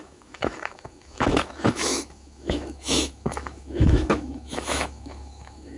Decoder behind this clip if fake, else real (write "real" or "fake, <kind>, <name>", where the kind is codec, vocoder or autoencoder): fake, autoencoder, DAC-VAE